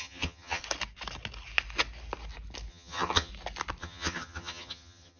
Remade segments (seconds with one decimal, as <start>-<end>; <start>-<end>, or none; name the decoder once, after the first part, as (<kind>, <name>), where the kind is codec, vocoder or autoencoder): 0.0-0.6 (vocoder, HiFi-GAN); 2.7-3.3; 3.8-5.2